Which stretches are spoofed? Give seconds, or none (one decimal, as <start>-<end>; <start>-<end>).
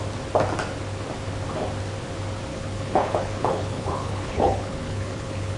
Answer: 2.5-5.6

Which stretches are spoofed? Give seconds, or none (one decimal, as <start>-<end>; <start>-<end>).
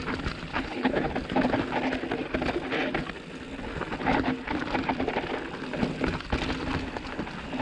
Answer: 0.5-1.1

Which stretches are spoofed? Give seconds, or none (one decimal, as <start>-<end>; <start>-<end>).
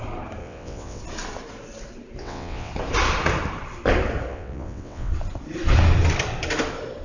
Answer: 0.4-1.0; 2.2-2.7; 4.3-5.1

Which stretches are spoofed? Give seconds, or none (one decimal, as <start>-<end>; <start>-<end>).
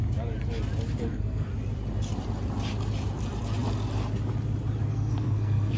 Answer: 1.0-1.5; 4.9-5.8